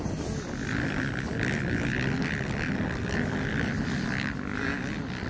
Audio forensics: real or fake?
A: real